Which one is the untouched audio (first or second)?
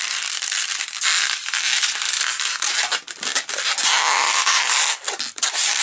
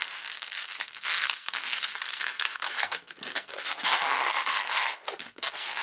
first